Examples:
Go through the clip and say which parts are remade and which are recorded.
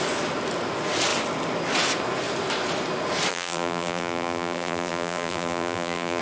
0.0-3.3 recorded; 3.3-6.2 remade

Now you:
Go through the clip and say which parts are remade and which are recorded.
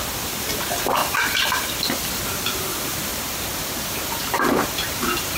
0.0-1.0 recorded; 1.0-1.8 remade; 1.8-3.1 recorded; 3.1-5.4 remade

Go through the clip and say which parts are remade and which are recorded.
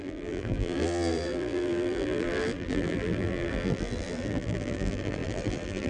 0.0-5.9 remade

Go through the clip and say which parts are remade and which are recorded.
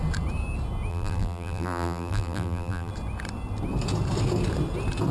0.0-0.9 recorded; 0.9-2.9 remade; 2.9-5.1 recorded